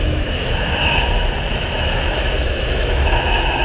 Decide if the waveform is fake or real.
fake